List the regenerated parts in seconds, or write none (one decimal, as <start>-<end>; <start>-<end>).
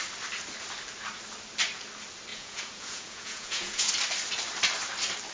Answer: 2.3-3.9